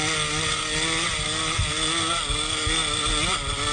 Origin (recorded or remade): recorded